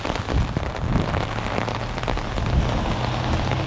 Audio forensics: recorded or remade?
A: recorded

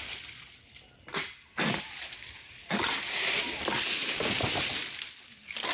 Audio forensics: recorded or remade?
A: recorded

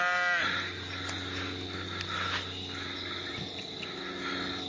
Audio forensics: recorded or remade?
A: recorded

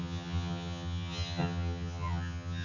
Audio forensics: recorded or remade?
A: remade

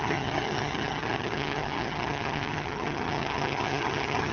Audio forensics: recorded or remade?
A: remade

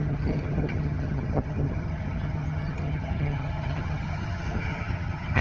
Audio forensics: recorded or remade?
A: remade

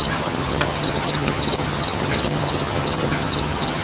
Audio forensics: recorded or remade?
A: remade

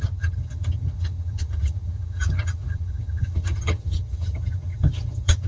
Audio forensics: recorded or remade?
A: remade